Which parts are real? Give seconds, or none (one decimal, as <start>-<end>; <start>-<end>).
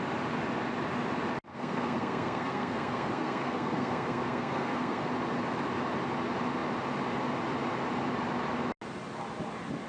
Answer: 0.0-1.5; 5.1-9.9